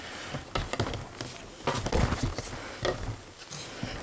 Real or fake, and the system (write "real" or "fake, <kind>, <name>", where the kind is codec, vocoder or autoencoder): real